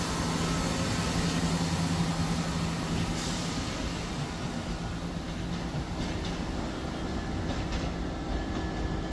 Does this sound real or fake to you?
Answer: real